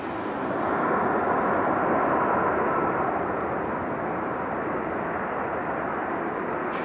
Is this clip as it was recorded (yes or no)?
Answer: yes